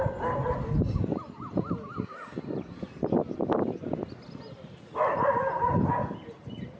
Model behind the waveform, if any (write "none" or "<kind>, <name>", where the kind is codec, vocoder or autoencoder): none